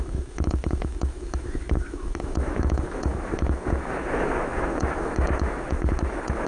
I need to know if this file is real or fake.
fake